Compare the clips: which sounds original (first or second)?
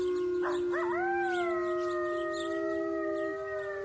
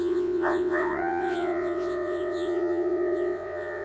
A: first